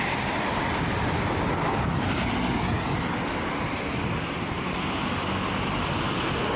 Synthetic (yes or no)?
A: no